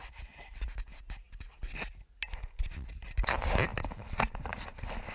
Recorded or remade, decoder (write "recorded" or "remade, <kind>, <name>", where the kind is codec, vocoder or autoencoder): recorded